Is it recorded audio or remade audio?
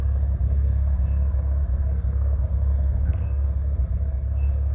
remade